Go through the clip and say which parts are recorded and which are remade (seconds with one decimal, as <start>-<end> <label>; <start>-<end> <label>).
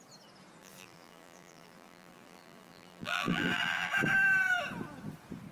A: 0.0-0.6 recorded; 0.6-3.9 remade; 3.9-5.5 recorded